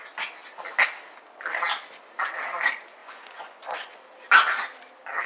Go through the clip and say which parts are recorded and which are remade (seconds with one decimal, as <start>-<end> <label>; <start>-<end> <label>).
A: 0.0-3.0 recorded; 3.0-4.0 remade; 4.0-5.3 recorded